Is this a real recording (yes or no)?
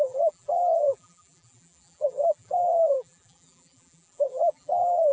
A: no